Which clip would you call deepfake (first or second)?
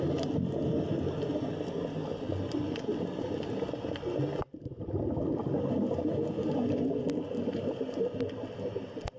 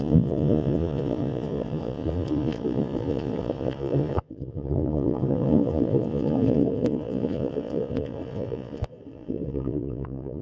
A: second